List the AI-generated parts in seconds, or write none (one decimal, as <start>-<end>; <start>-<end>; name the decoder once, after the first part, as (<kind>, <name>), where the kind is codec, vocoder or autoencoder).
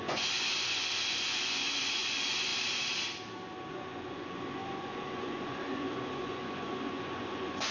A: 0.0-2.5 (vocoder, Vocos); 3.7-7.7